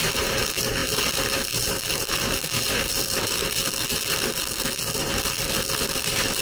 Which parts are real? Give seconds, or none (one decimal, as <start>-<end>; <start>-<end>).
0.0-6.4